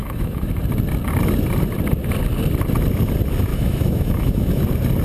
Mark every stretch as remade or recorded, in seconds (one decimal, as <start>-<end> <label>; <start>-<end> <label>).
0.0-0.6 remade; 0.6-3.5 recorded; 3.5-4.6 remade; 4.6-5.0 recorded